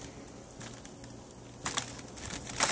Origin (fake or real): real